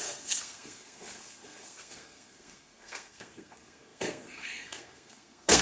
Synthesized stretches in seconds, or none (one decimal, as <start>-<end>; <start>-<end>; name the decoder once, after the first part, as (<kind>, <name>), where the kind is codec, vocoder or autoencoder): 0.0-5.6 (codec, SNAC)